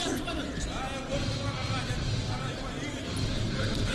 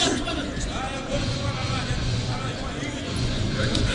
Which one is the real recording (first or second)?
first